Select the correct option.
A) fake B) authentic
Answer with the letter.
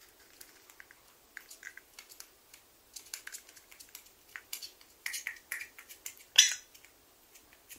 B